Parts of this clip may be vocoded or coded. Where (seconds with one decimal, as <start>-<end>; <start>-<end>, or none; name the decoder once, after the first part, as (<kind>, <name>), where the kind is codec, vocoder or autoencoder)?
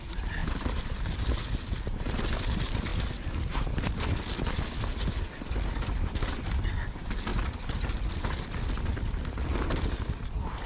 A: 0.4-1.4 (vocoder, BigVGAN v2)